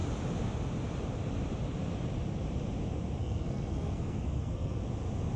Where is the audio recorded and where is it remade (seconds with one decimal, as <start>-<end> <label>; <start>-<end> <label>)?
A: 0.0-3.2 recorded; 3.2-4.8 remade; 4.8-5.4 recorded